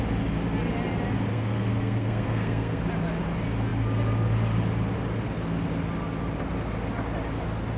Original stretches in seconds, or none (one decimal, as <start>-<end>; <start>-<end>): 0.0-1.3; 2.8-7.8

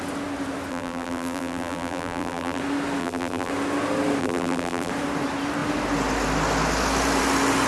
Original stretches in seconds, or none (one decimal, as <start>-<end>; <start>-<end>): 0.0-0.7; 2.6-3.0; 3.5-4.2; 4.9-7.7

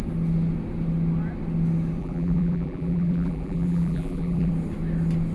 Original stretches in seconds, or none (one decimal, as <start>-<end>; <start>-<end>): 0.0-2.0; 4.5-5.3

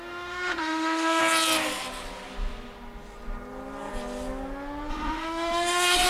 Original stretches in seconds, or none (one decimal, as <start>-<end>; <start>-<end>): 1.2-4.9